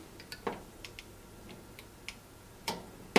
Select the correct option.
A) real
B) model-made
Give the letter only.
A